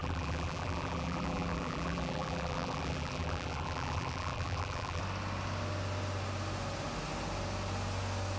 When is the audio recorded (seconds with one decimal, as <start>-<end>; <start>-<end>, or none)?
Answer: 5.0-8.4